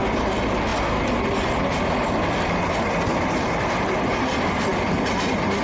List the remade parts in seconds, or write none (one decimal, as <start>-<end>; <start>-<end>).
none